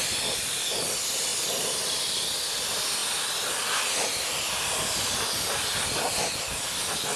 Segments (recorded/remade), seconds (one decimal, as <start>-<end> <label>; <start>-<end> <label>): 0.0-7.2 recorded